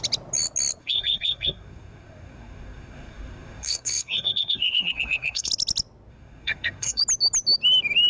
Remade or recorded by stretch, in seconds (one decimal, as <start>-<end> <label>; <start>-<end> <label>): 0.0-0.8 recorded; 0.8-5.5 remade; 5.5-6.1 recorded; 6.1-7.0 remade; 7.0-8.1 recorded